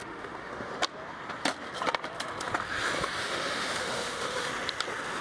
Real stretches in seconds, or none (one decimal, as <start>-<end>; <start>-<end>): 0.7-3.2; 4.5-5.2